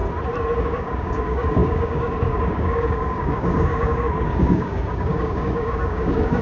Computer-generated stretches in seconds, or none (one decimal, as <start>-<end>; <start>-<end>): 0.6-6.4